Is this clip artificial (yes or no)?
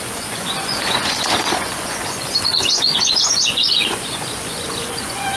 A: yes